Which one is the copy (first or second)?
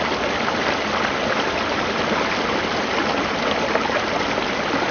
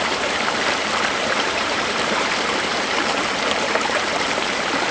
second